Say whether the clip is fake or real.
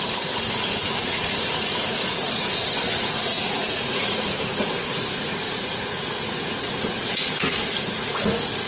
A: fake